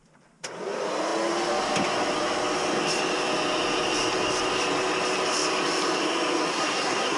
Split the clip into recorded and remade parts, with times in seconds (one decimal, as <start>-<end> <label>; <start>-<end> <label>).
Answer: 0.0-6.5 recorded; 6.5-7.2 remade